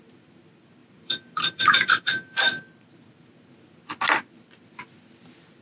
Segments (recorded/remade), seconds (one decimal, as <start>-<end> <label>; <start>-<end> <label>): 0.0-0.8 recorded; 0.8-2.5 remade; 2.5-5.6 recorded